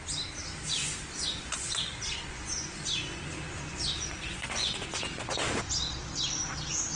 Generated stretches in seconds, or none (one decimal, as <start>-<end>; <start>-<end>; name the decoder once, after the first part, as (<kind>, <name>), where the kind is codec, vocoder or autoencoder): 0.8-5.0 (vocoder, Vocos)